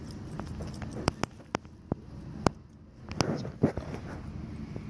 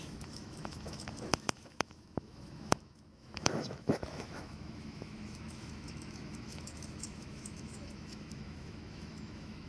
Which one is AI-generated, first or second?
second